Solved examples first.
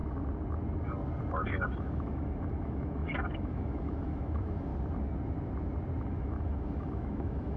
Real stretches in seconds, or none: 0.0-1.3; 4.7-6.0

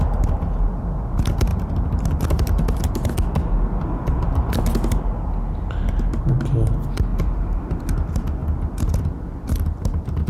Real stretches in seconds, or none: 0.0-7.1; 7.8-10.3

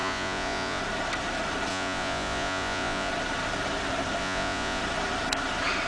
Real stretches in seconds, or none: 0.8-1.7; 3.1-4.2; 4.8-5.9

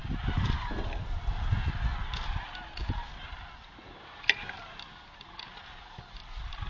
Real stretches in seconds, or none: 0.0-6.7

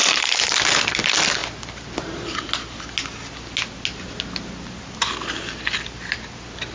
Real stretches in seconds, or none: 0.0-6.7

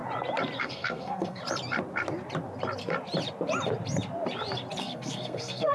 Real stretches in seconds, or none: 0.0-0.6; 1.4-4.8

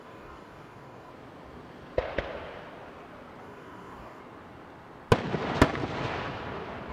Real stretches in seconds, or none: 1.1-3.4; 4.2-6.9

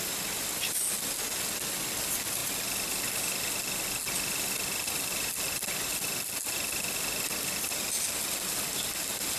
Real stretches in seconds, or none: 0.0-9.4